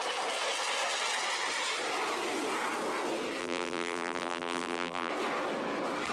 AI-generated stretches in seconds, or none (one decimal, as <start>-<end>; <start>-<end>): 3.4-5.1